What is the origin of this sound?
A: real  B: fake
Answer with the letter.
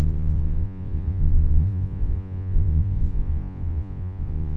B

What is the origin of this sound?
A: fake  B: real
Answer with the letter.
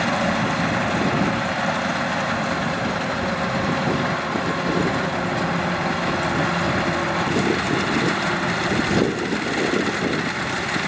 B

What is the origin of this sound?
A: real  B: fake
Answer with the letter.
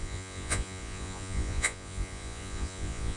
B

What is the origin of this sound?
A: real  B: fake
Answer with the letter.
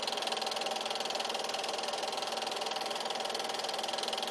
A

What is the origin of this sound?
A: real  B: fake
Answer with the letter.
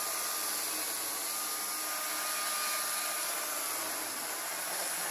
A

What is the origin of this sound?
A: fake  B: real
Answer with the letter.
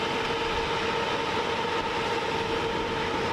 B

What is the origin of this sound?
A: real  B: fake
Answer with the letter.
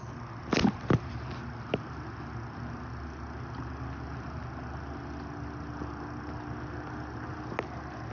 A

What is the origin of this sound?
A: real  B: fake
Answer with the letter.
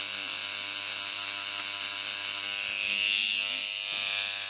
A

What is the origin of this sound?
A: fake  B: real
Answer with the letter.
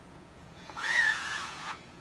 A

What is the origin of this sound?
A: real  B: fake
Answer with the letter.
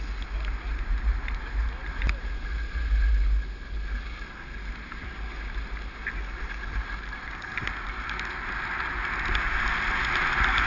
A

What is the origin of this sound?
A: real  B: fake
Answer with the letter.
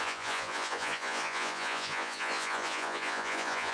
B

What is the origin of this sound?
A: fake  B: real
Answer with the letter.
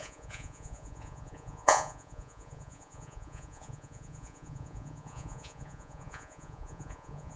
A